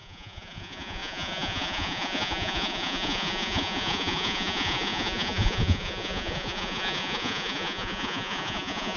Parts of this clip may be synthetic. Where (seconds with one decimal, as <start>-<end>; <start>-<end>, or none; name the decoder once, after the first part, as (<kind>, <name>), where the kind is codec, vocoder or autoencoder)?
0.0-9.0 (vocoder, Vocos)